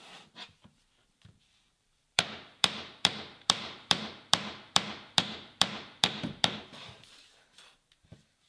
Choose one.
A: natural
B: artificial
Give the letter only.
B